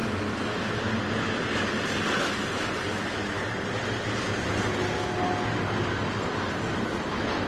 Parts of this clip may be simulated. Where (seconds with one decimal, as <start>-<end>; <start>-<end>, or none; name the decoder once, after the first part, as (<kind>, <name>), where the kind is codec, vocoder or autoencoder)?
none